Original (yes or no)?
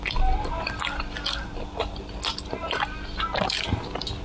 yes